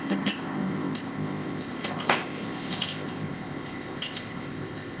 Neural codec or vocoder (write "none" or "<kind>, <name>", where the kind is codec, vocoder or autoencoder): codec, ZipCodec